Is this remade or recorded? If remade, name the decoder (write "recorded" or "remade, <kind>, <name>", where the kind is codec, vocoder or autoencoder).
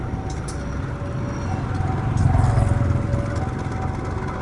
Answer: recorded